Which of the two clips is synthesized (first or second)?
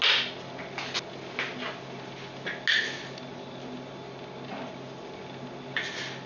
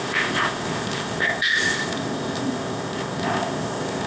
second